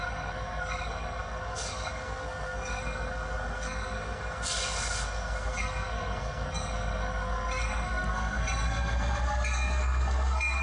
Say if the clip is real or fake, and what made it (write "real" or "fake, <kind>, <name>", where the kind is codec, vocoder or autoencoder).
fake, codec, SNAC